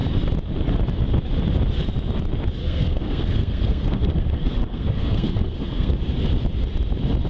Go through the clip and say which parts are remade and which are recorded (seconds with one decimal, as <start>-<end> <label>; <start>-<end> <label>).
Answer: 0.0-2.6 recorded; 2.6-6.0 remade; 6.0-7.3 recorded